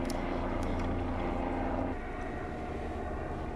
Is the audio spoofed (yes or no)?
no